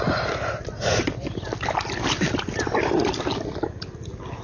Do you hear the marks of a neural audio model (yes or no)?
no